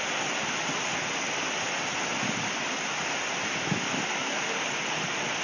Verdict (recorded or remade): recorded